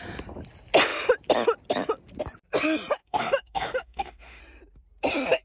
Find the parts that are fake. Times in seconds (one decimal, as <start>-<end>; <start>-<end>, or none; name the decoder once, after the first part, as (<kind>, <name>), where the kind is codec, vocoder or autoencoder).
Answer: 3.0-4.4 (autoencoder, DAC-VAE)